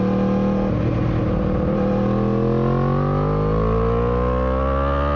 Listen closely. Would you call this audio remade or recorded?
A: recorded